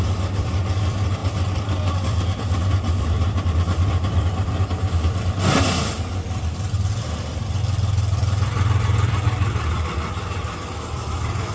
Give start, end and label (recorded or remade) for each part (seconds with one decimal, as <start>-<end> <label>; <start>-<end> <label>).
0.0-11.5 remade